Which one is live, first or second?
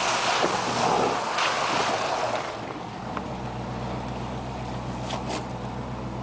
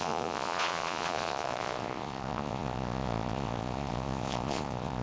first